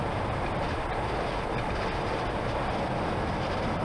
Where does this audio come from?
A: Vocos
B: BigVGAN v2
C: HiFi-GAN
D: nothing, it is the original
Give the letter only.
B